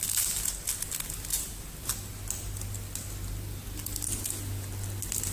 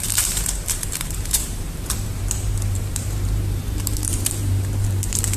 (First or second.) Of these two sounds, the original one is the first